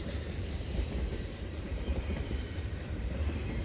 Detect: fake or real fake